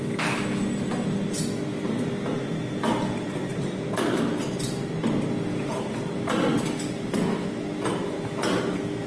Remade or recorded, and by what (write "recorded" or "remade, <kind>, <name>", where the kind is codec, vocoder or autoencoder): recorded